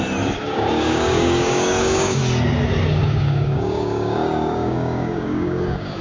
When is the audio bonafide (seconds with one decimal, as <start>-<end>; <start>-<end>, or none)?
0.0-0.4; 2.2-3.0